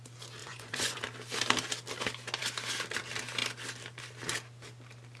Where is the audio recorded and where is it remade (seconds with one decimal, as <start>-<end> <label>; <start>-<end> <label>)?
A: 0.0-0.4 recorded; 0.4-1.0 remade; 1.0-5.2 recorded